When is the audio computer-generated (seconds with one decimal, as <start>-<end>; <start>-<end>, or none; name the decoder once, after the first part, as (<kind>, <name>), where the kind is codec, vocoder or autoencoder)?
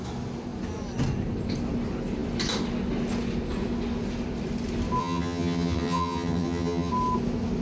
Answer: 5.0-6.9 (vocoder, HiFi-GAN)